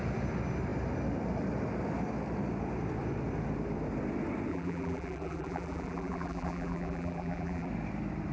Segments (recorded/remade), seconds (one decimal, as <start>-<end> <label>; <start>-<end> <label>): 0.0-4.5 recorded; 4.5-7.7 remade; 7.7-8.3 recorded